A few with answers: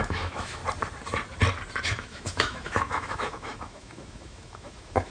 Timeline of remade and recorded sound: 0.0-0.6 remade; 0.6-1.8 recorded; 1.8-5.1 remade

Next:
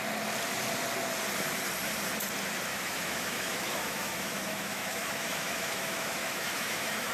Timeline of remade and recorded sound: 0.0-2.7 recorded; 2.7-7.1 remade

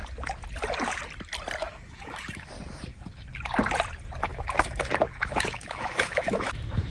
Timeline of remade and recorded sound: 0.0-1.6 recorded; 1.6-2.5 remade; 2.5-4.3 recorded; 4.3-6.9 remade

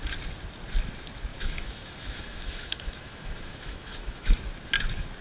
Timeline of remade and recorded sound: 0.0-1.3 recorded; 1.3-4.4 remade; 4.4-5.2 recorded